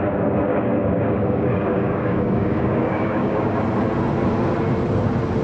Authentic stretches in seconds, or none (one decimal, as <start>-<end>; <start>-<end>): 0.0-0.5; 3.6-5.4